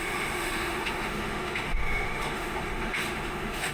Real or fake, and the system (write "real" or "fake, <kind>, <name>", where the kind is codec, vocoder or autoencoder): fake, autoencoder, DAC-VAE